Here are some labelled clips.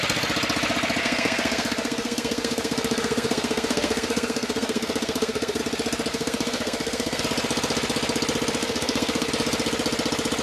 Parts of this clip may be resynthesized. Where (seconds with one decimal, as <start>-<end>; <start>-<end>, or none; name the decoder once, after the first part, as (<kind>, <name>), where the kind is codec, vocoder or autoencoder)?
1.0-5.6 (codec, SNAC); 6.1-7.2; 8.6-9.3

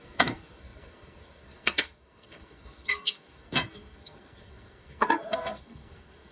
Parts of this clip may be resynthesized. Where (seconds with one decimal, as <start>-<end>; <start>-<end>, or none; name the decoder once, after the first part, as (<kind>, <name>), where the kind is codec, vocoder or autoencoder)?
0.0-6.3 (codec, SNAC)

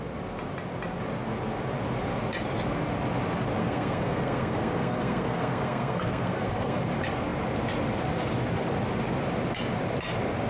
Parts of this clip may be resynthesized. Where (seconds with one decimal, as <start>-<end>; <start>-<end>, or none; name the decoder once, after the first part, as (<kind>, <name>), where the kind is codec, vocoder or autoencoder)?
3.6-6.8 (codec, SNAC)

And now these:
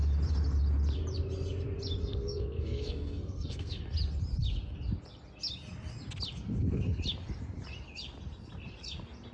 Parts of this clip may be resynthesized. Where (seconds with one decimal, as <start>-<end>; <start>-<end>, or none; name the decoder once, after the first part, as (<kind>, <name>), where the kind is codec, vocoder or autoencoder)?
2.0-3.8 (codec, SNAC); 6.5-7.0

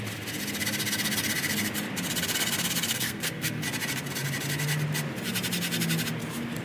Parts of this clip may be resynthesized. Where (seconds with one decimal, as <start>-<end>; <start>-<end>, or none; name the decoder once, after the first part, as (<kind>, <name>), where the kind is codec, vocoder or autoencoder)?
2.9-3.6 (codec, SNAC)